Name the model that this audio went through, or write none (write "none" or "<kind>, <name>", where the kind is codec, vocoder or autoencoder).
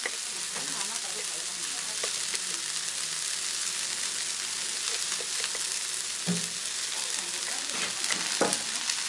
none